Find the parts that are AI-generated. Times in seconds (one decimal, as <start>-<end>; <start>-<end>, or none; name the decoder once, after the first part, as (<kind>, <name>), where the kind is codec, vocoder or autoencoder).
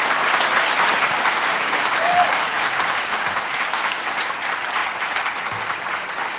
1.5-4.3 (codec, DAC)